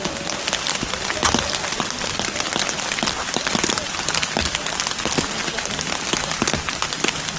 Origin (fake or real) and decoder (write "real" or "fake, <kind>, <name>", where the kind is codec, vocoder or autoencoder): real